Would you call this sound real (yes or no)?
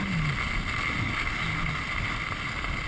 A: yes